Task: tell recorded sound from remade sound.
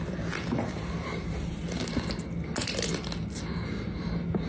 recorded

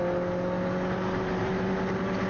recorded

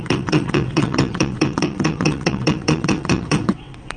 remade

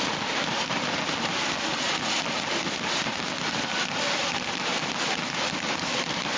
remade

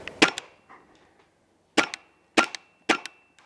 recorded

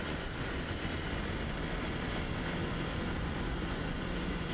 remade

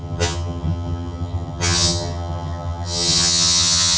remade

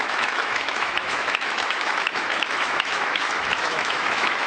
remade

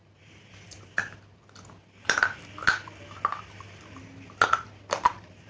recorded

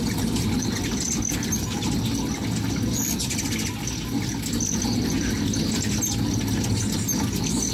recorded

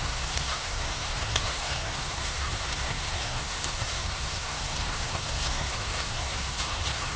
remade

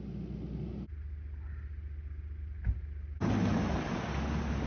recorded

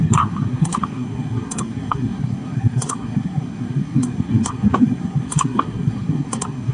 remade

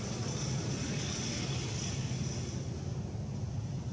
recorded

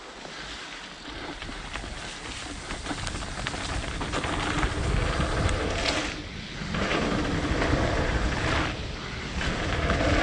recorded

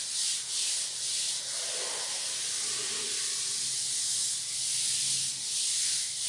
recorded